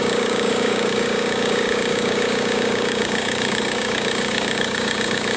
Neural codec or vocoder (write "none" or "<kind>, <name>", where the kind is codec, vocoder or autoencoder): codec, DAC